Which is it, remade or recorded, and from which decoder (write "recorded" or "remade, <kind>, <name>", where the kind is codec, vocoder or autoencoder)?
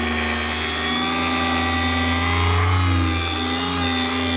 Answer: recorded